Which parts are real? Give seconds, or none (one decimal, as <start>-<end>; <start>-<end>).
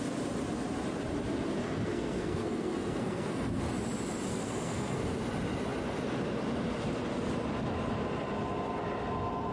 0.0-1.6; 3.6-4.3; 5.0-9.5